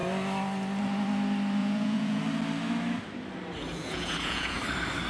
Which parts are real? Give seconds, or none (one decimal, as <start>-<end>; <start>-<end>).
0.0-1.6; 2.2-3.7; 4.6-5.1